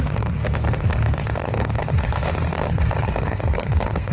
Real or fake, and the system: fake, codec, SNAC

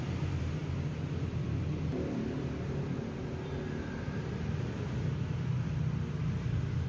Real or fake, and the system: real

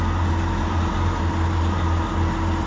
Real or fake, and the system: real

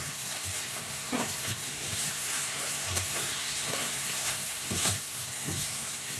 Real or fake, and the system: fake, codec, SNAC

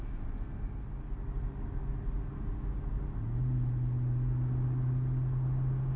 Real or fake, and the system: real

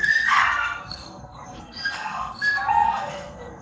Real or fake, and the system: fake, codec, SNAC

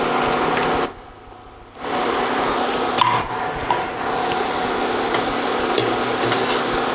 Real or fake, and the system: real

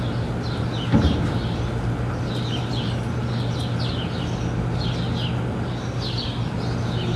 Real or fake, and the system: real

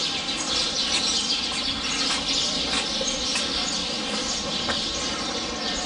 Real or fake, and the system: real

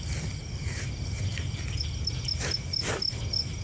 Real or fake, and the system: real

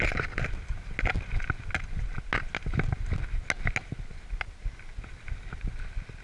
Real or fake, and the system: real